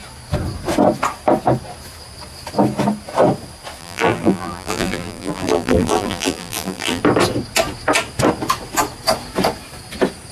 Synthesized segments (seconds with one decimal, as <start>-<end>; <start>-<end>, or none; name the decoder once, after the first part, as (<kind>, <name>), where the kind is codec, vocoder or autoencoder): 3.8-7.0 (vocoder, BigVGAN v2)

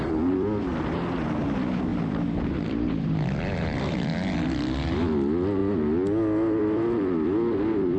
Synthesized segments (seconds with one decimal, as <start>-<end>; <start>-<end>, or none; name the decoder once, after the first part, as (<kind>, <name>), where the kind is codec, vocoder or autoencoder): 0.0-0.7 (vocoder, BigVGAN v2); 1.4-1.9; 2.5-5.6; 6.6-8.0

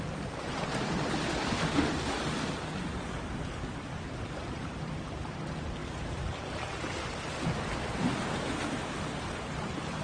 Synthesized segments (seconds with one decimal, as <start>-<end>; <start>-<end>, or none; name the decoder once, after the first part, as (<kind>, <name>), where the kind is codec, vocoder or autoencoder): none